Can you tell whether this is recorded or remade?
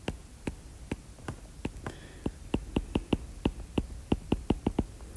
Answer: recorded